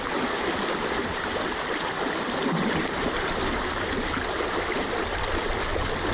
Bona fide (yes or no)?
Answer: yes